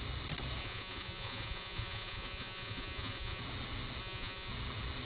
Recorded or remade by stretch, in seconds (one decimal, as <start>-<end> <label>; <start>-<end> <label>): 0.0-0.6 recorded; 0.6-3.4 remade; 3.4-4.0 recorded; 4.0-4.5 remade; 4.5-5.0 recorded